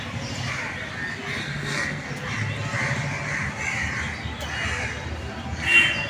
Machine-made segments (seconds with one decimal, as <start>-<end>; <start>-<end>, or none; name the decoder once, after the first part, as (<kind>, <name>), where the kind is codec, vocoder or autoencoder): 1.4-2.1 (codec, SNAC)